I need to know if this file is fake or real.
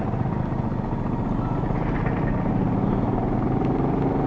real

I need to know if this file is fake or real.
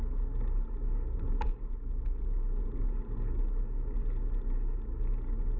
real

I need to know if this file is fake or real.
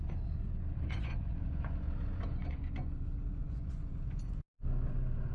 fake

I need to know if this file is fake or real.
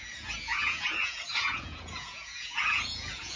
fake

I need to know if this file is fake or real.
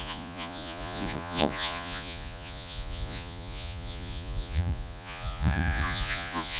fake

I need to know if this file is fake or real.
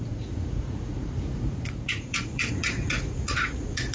fake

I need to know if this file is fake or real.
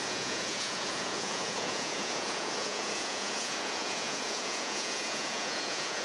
fake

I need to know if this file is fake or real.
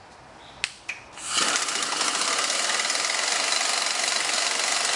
real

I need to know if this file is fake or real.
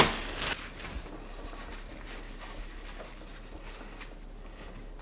real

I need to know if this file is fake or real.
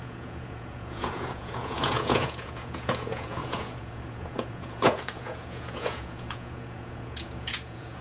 fake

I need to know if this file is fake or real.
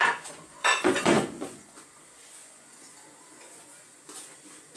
fake